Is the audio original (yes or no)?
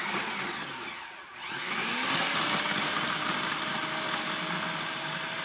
yes